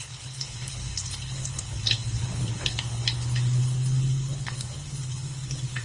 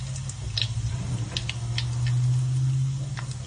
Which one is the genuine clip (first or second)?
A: second